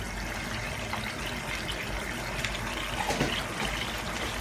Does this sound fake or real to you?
real